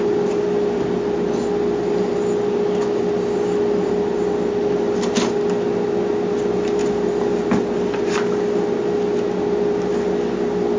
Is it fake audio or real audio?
real